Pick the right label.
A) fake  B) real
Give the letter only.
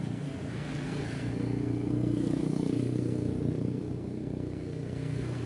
A